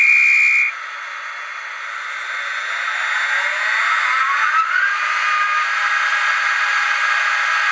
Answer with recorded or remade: recorded